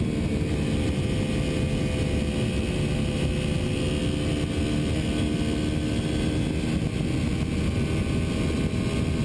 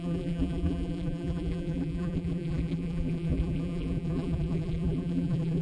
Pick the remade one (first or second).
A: second